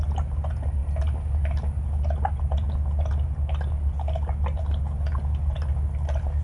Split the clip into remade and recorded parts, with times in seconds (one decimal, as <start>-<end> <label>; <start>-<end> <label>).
0.0-6.4 recorded